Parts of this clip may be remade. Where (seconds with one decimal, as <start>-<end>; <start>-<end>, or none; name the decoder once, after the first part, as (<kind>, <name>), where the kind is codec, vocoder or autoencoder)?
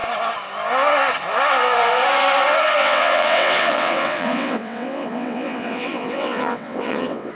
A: 2.8-7.3 (vocoder, WaveNeXt)